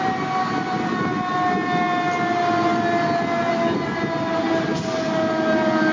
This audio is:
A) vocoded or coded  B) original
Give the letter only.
B